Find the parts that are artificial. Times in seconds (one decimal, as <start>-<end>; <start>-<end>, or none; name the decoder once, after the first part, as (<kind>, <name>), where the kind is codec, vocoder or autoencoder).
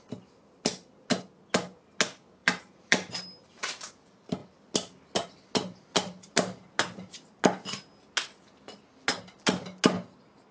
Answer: 2.4-3.1 (vocoder, BigVGAN v2)